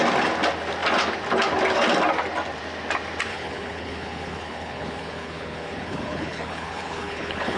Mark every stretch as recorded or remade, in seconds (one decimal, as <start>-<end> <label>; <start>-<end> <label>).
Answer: 0.0-3.3 recorded; 3.3-7.6 remade